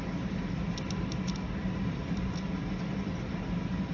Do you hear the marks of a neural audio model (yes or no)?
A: no